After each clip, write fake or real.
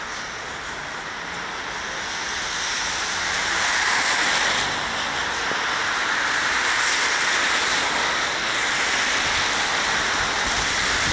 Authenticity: real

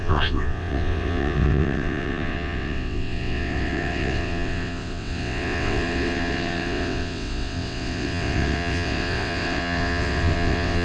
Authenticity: fake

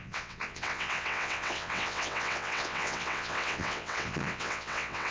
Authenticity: fake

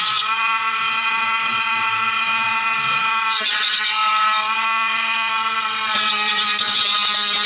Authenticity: fake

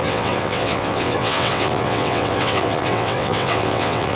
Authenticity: fake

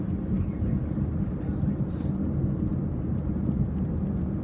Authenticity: real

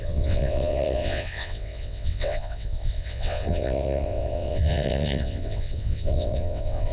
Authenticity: fake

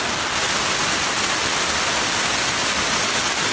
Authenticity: real